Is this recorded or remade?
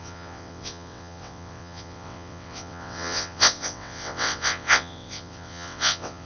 remade